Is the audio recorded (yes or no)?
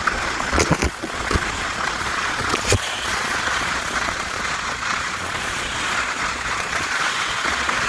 no